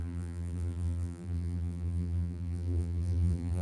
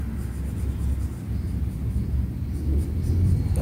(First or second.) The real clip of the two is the second